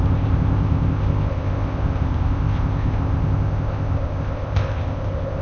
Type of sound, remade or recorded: remade